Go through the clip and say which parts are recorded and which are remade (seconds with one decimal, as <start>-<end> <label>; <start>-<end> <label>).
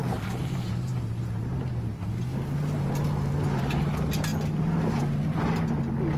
0.0-6.2 recorded